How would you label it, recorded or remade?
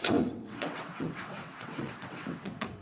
remade